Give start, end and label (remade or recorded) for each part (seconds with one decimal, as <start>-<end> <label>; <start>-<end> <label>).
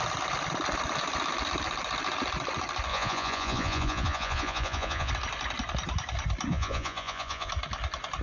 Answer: 0.0-2.9 recorded; 2.9-5.1 remade; 5.1-6.5 recorded; 6.5-7.5 remade; 7.5-8.2 recorded